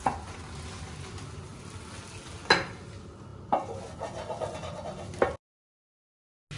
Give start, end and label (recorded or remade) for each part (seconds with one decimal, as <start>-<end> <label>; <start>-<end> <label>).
0.0-6.6 recorded